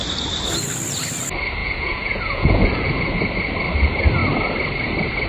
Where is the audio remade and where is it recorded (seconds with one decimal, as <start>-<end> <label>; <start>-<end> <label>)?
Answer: 0.0-1.6 recorded; 1.6-2.9 remade; 2.9-5.3 recorded